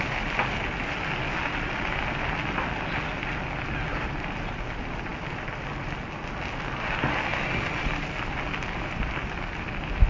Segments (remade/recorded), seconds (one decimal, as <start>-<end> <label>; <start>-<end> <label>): 0.0-10.1 recorded